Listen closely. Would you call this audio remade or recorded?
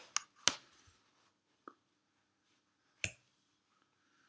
recorded